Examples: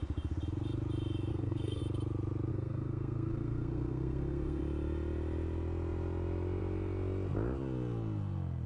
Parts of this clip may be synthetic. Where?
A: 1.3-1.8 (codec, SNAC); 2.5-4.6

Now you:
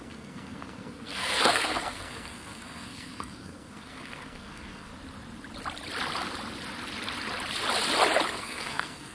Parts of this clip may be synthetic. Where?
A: 0.0-4.9 (codec, SNAC); 8.3-9.1

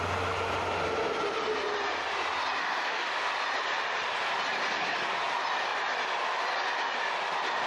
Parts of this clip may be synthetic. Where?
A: 2.6-3.1 (autoencoder, DAC-VAE)

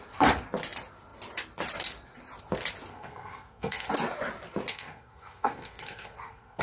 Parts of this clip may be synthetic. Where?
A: 2.9-3.9 (codec, SNAC); 4.7-6.6

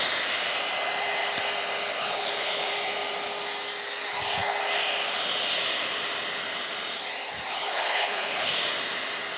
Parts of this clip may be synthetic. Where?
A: 2.0-2.7 (codec, HILCodec); 7.5-8.5

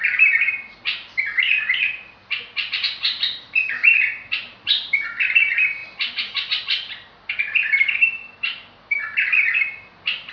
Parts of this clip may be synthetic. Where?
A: none